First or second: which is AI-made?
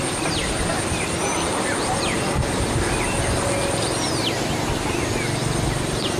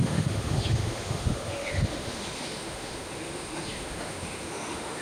second